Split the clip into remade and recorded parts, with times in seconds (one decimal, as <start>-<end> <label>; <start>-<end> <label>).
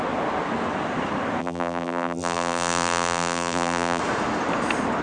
0.0-1.4 recorded; 1.4-4.0 remade; 4.0-5.0 recorded